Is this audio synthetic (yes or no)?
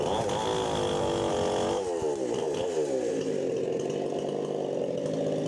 no